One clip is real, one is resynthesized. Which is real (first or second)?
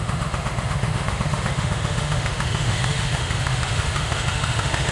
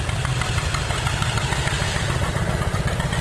second